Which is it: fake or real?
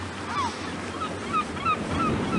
real